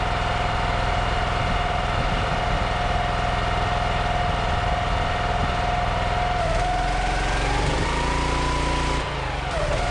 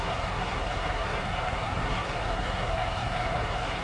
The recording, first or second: first